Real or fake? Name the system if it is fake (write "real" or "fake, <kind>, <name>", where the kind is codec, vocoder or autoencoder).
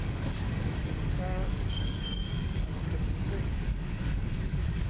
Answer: fake, codec, DAC